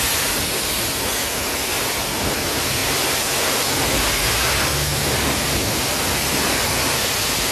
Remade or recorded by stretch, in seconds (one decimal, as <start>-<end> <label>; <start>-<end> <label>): 0.0-7.5 recorded